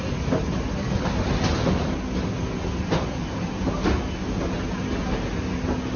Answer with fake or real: real